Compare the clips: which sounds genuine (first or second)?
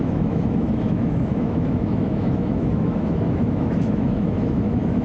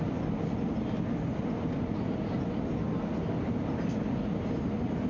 second